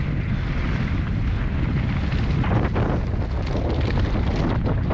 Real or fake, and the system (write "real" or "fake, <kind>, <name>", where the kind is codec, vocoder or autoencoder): real